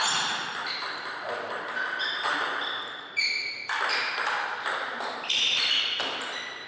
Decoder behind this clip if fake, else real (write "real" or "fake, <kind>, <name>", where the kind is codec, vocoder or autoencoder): real